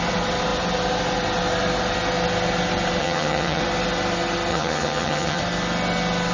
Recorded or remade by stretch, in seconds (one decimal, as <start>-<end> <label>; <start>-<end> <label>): 0.0-3.0 recorded; 3.0-3.6 remade; 3.6-4.5 recorded; 4.5-5.4 remade; 5.4-6.3 recorded